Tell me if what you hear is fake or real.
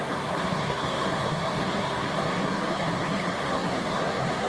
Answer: fake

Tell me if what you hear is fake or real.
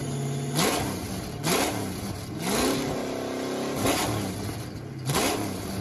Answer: real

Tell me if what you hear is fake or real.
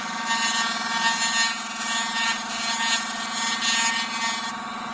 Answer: real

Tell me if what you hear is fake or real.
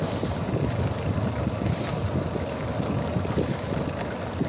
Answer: real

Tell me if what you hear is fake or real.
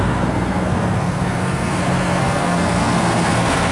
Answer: fake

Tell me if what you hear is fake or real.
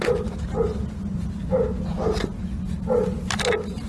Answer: real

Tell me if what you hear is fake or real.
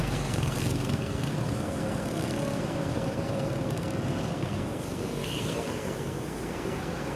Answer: fake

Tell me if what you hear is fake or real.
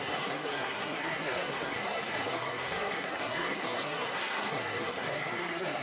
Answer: fake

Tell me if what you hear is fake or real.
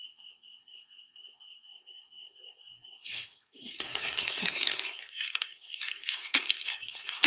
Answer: fake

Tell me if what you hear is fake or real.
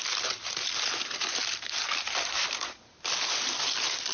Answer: real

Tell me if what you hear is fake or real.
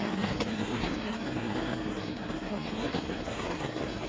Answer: fake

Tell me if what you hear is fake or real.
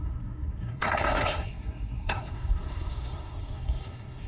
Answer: fake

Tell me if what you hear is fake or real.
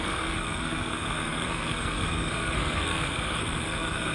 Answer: fake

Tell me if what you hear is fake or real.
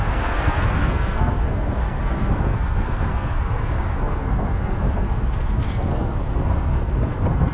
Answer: fake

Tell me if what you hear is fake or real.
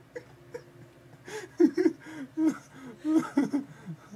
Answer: real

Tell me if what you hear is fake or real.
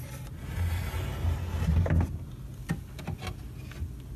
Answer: real